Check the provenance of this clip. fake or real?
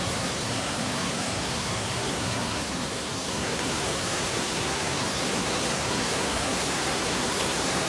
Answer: fake